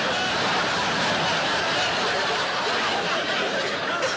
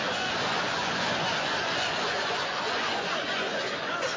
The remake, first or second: second